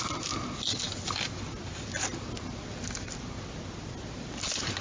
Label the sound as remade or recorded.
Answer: recorded